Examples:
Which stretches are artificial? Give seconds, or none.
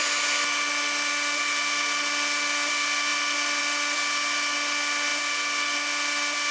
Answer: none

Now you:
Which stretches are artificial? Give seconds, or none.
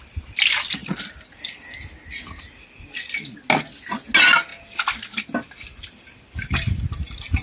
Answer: 0.8-1.6 (vocoder, BigVGAN v2); 4.5-7.0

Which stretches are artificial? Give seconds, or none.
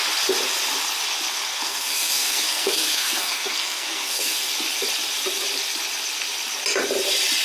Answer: 1.5-4.5 (codec, SNAC)